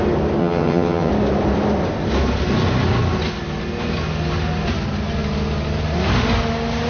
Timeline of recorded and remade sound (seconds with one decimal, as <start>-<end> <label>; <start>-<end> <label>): 0.0-0.4 recorded; 0.4-1.1 remade; 1.1-6.9 recorded